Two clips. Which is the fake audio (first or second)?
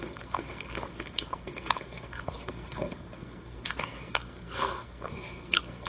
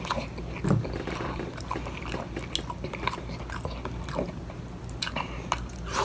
first